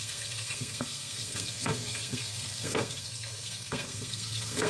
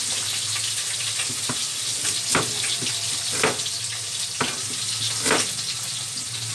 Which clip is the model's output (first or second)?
first